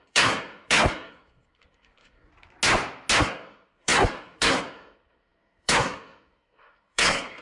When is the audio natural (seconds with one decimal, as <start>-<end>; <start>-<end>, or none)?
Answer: 2.3-3.2